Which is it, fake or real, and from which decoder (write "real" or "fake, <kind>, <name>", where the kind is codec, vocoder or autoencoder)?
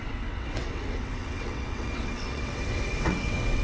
fake, vocoder, WaveNeXt